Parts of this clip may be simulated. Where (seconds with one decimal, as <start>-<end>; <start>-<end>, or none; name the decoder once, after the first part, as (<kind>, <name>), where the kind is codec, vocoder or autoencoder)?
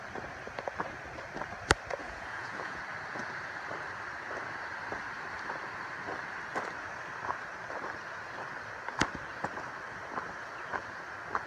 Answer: 2.0-2.8 (vocoder, Vocos)